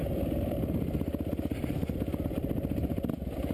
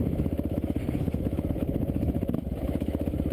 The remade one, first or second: second